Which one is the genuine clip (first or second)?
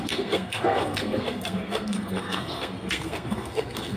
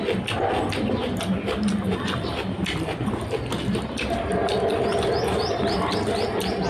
second